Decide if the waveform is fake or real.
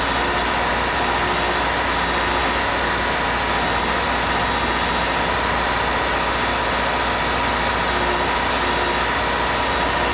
real